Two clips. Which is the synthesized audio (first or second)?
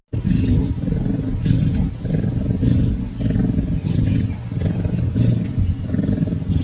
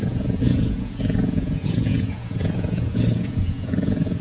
second